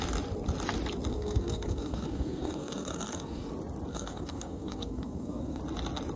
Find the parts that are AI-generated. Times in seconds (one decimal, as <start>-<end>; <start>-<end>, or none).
1.1-3.5; 3.9-5.6